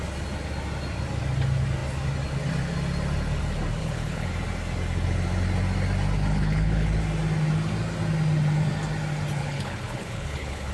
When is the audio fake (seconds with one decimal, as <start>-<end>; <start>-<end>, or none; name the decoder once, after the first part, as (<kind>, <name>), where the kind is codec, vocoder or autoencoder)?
3.8-4.3 (codec, HILCodec); 6.3-7.0; 9.4-10.7